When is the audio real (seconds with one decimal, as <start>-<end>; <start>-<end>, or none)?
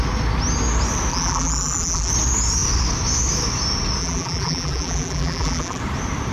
0.0-1.1; 2.1-4.0; 5.8-6.3